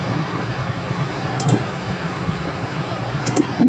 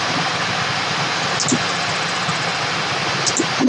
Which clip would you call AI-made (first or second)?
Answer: first